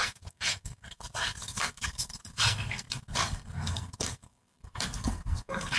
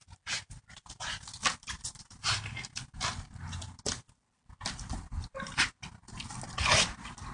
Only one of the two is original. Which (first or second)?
second